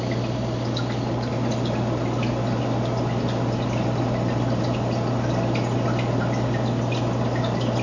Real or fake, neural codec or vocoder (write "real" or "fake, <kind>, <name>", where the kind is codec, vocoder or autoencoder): real